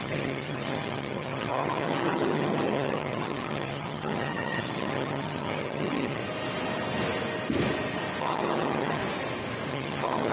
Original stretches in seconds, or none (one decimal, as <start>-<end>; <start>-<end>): 6.2-8.2; 9.0-9.7